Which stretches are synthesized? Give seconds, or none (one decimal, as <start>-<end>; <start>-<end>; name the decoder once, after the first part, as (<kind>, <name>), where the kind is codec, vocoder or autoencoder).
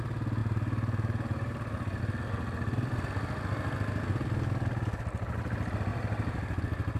0.4-2.0 (vocoder, BigVGAN v2); 5.9-6.6